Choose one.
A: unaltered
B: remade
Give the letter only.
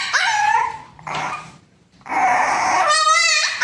B